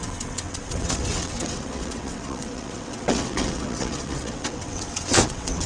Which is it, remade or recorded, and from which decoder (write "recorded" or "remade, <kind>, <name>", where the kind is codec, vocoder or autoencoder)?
remade, vocoder, WaveNeXt